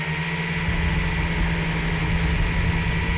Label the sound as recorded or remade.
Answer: recorded